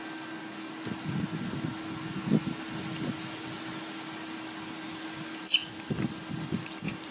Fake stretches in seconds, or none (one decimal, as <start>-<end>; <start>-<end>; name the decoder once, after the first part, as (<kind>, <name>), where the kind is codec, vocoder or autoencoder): none